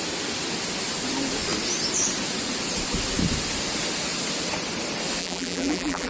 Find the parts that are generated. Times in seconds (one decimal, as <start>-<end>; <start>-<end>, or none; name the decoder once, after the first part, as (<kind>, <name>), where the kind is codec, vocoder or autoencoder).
5.2-6.1 (vocoder, BigVGAN v2)